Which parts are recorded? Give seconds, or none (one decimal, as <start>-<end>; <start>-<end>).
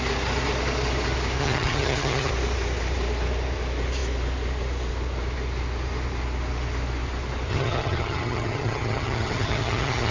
0.0-1.4; 2.3-7.5